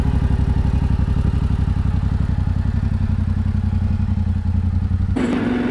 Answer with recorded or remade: recorded